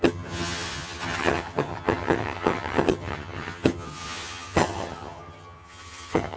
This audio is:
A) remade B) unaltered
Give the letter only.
A